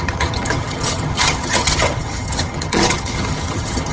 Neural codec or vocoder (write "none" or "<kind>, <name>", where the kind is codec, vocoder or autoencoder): vocoder, HiFi-GAN